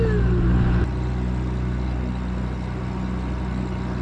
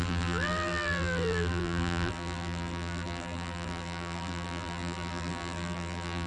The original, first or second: first